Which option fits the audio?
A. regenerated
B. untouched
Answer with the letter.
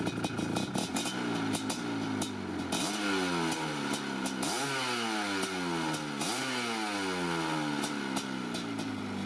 B